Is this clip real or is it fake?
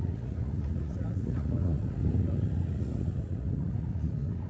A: fake